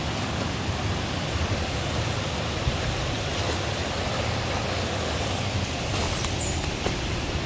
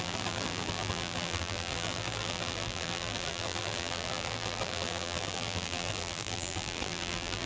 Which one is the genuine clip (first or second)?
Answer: first